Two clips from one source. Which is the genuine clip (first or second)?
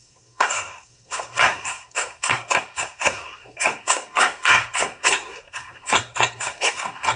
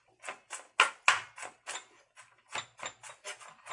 second